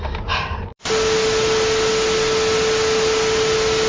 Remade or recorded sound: recorded